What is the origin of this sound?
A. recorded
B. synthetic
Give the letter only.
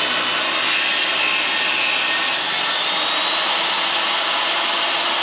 A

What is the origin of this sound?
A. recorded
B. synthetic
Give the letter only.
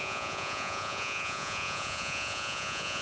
B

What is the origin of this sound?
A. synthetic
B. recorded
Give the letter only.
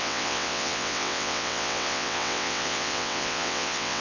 A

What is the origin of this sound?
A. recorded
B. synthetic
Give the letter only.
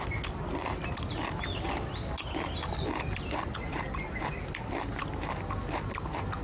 A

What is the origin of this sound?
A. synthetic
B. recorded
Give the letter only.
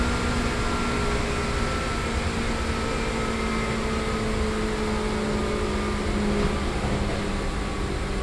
B